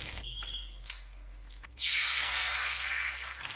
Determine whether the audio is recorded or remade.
remade